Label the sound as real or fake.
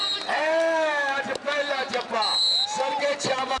real